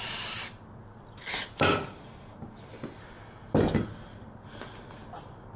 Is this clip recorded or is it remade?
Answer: recorded